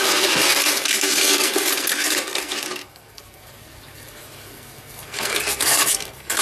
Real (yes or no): no